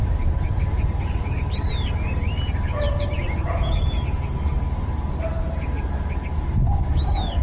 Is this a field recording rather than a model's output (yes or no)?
yes